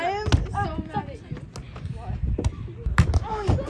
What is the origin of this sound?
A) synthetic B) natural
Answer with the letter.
B